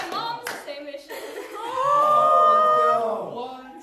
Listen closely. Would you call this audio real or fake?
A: real